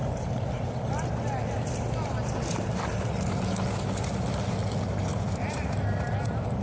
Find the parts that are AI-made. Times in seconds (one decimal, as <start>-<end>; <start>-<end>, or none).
0.0-0.7; 5.1-6.1